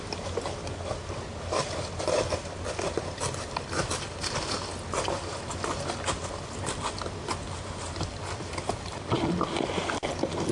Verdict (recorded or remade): recorded